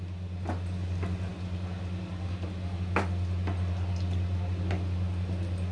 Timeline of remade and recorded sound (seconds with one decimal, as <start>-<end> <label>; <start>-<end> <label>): 0.0-5.7 recorded